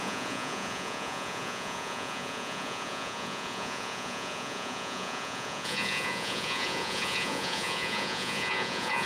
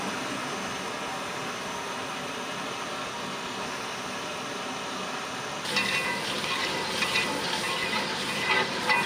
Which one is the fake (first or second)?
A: first